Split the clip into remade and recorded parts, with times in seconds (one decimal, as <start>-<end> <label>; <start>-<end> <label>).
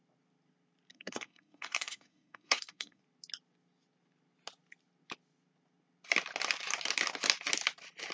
0.0-0.9 recorded; 0.9-3.0 remade; 3.0-8.1 recorded